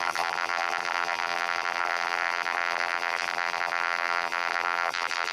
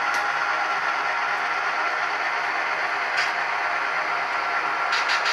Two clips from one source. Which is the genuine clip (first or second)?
second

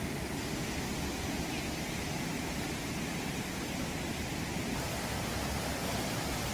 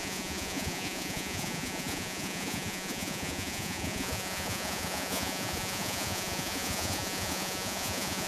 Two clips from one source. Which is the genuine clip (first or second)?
first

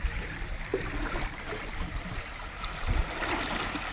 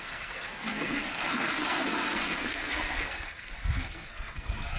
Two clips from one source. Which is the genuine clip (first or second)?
first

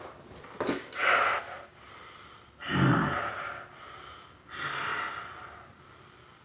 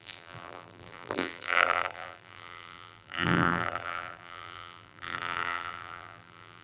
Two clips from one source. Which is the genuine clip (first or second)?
first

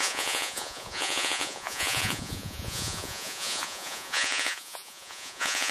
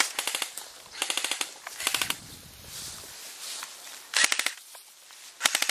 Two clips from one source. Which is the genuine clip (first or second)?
second